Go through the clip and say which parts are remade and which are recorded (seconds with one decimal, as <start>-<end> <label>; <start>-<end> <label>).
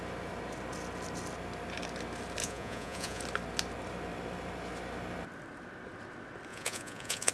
0.0-2.4 recorded; 2.4-3.2 remade; 3.2-6.5 recorded; 6.5-7.3 remade